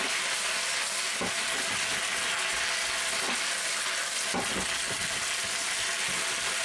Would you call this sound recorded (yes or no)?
yes